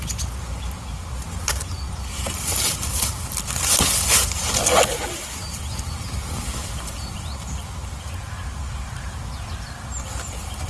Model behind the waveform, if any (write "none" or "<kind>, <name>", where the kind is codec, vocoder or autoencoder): none